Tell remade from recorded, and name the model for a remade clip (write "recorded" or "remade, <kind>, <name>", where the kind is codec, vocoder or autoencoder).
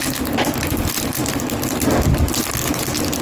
recorded